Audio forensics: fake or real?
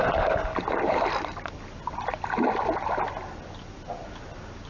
real